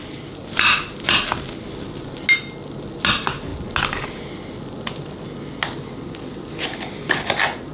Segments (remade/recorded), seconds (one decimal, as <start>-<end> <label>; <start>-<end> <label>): 0.0-7.7 recorded